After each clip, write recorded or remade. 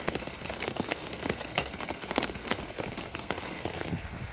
remade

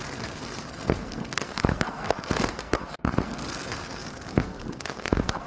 remade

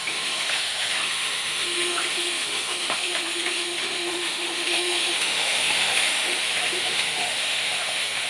remade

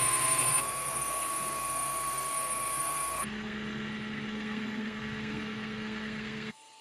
remade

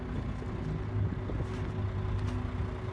recorded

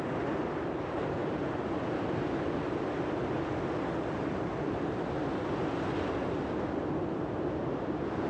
recorded